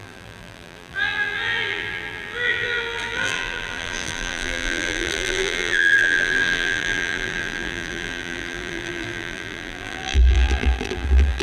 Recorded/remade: remade